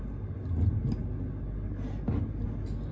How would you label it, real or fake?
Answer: real